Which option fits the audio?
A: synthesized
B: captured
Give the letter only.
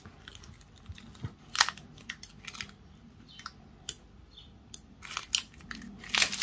B